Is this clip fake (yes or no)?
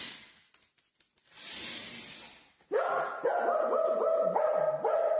no